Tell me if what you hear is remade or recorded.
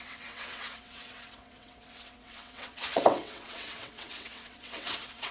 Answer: remade